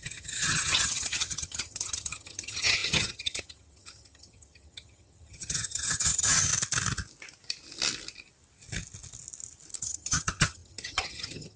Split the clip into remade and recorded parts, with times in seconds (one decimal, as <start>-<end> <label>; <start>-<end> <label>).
0.0-6.5 remade; 6.5-9.8 recorded; 9.8-11.6 remade

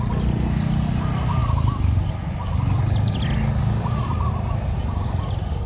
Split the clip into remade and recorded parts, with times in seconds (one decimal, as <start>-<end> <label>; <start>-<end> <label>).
0.0-5.7 recorded

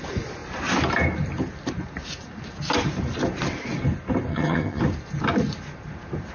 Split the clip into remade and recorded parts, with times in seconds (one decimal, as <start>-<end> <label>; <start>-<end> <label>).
0.0-4.3 recorded; 4.3-4.8 remade; 4.8-6.3 recorded

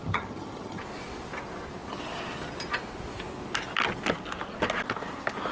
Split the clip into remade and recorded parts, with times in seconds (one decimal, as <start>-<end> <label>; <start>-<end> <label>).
0.0-0.8 remade; 0.8-5.5 recorded

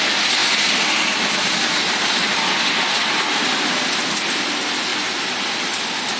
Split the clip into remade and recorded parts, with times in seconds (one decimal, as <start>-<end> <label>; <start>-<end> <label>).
0.0-6.2 recorded

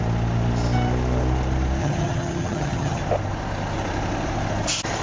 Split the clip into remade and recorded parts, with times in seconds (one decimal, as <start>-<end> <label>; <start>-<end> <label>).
0.0-1.8 recorded; 1.8-3.0 remade; 3.0-5.0 recorded

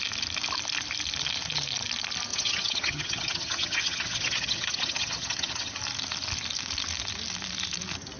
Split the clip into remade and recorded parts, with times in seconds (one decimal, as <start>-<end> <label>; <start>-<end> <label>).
0.0-2.3 recorded; 2.3-5.8 remade; 5.8-8.2 recorded

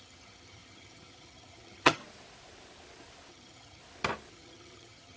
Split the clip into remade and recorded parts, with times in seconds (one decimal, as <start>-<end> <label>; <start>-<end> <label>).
0.0-2.0 remade; 2.0-3.3 recorded; 3.3-3.8 remade; 3.8-4.3 recorded; 4.3-5.2 remade